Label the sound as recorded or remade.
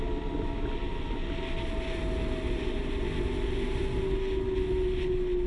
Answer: recorded